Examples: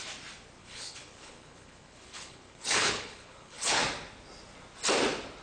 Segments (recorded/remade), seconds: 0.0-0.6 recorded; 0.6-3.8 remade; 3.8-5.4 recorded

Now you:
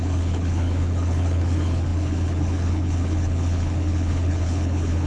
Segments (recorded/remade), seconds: 0.0-5.1 remade

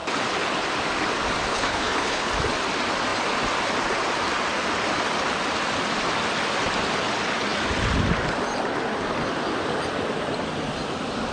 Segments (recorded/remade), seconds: 0.0-1.5 recorded; 1.5-2.3 remade; 2.3-11.3 recorded

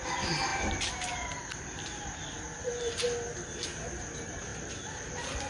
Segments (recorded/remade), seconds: 0.0-5.5 recorded